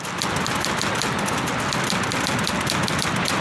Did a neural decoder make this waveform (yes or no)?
no